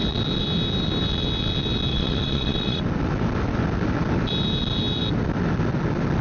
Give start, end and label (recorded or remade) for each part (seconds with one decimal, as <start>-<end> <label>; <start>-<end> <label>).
0.0-1.9 recorded; 1.9-2.8 remade; 2.8-6.2 recorded